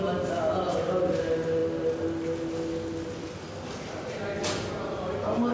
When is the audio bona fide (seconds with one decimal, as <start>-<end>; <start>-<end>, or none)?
0.0-5.5